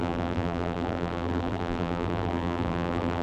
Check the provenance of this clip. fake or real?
fake